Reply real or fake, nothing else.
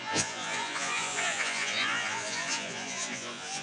fake